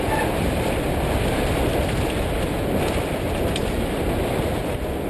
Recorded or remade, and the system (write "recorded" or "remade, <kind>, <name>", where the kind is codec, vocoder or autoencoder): recorded